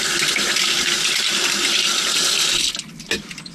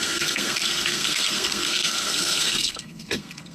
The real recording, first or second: first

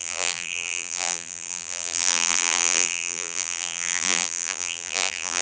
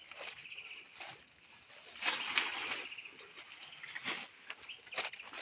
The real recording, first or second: second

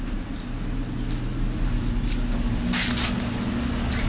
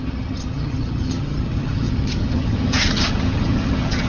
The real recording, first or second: first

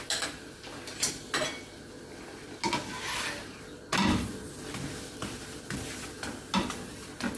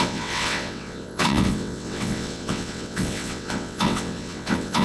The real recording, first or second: first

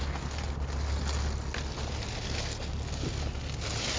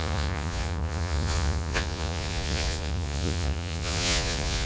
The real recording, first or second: first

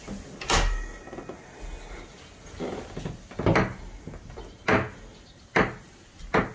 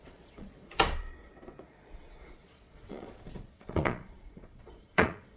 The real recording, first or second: first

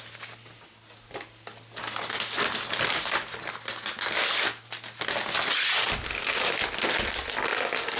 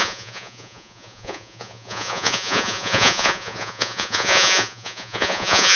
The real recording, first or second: first